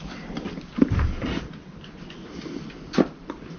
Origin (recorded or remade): recorded